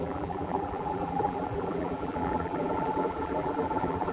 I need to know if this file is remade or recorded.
remade